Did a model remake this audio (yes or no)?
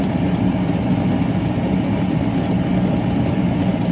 no